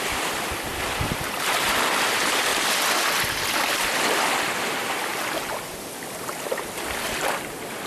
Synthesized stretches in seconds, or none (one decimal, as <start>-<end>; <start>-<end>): none